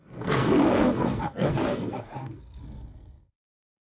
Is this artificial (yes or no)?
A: yes